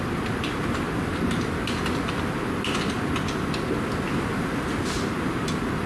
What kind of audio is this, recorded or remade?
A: recorded